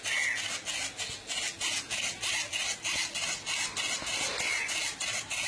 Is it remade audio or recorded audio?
recorded